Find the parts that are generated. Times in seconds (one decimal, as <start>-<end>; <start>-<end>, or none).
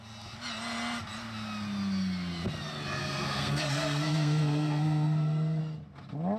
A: 3.0-5.6